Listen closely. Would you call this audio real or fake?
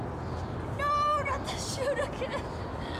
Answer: real